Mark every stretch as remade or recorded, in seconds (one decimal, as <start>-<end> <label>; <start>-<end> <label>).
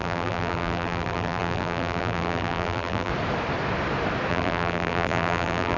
0.0-3.1 remade; 3.1-4.3 recorded; 4.3-5.8 remade